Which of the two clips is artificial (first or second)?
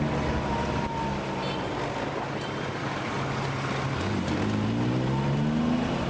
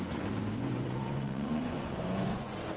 second